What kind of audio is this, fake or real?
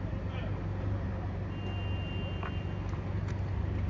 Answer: real